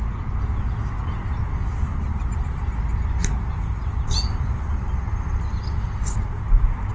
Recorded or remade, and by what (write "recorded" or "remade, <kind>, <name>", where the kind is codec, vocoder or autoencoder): recorded